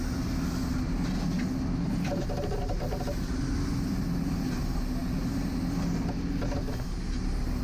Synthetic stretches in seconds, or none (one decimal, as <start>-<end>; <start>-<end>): none